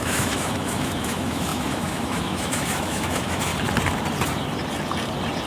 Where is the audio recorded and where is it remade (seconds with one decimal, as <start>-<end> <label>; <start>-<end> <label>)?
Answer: 0.0-3.5 remade; 3.5-5.5 recorded